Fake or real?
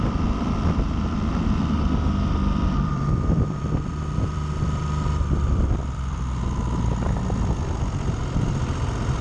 fake